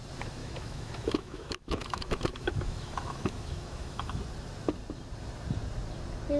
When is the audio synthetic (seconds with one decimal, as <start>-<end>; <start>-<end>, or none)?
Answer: 0.4-4.2